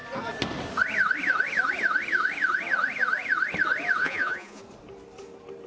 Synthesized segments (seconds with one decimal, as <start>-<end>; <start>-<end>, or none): 4.0-4.6